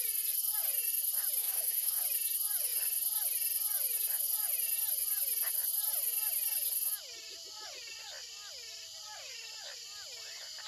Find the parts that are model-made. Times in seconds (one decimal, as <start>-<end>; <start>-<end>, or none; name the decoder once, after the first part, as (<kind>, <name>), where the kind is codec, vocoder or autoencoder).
1.4-2.0 (autoencoder, DAC-VAE)